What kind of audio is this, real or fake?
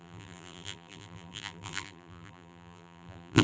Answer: fake